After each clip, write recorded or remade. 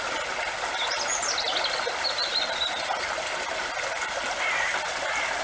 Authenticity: recorded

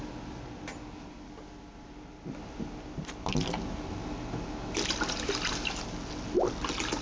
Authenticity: recorded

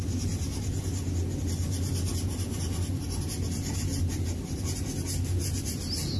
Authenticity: recorded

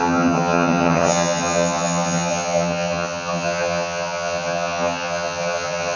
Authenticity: remade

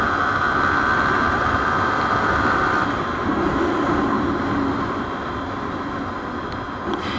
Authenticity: recorded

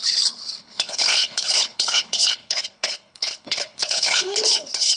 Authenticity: remade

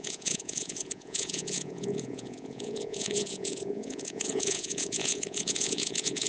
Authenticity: remade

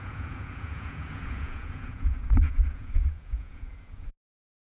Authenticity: remade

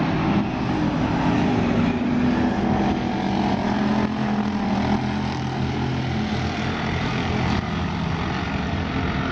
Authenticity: recorded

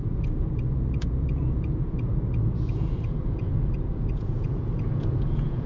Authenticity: remade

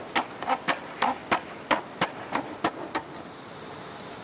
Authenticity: recorded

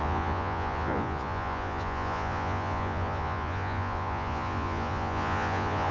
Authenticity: remade